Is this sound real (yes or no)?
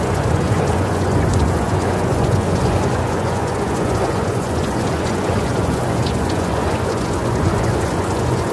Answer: no